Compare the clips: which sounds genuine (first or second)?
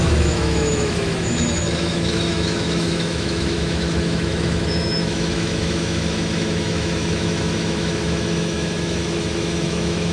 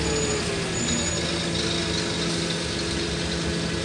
second